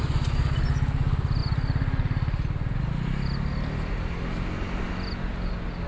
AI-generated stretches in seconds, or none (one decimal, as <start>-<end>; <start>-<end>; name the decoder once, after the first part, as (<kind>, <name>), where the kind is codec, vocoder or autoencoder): none